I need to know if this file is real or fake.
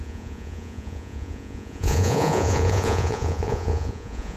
fake